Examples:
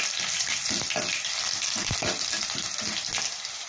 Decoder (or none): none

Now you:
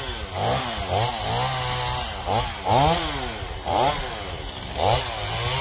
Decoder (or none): none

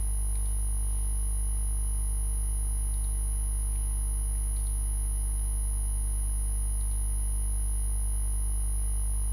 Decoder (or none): none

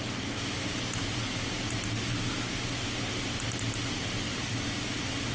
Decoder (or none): none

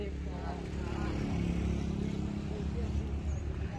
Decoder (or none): none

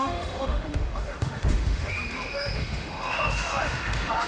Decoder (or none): autoencoder, DAC-VAE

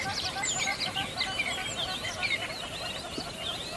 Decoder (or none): none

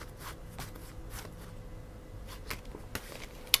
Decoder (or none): none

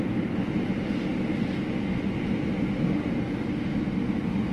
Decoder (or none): none